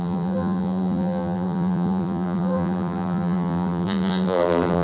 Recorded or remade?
remade